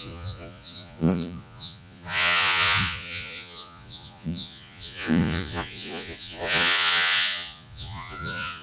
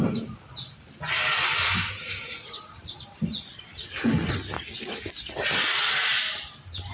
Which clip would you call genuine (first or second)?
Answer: second